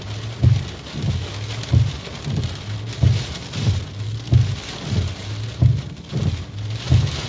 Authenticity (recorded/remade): recorded